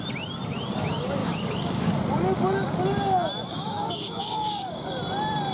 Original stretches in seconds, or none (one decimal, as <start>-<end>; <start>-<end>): 0.0-1.2; 1.9-3.5; 5.0-5.5